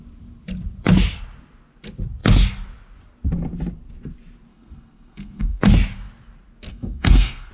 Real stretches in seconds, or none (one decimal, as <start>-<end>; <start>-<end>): 0.0-4.5; 5.6-6.7